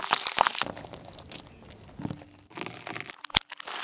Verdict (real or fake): real